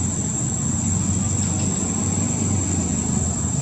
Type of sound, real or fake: real